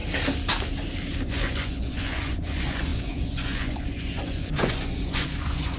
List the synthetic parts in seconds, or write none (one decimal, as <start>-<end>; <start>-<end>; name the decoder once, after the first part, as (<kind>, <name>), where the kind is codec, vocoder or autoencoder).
1.3-5.8 (vocoder, Vocos)